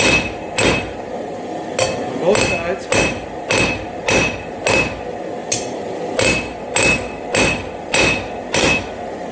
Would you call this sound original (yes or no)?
yes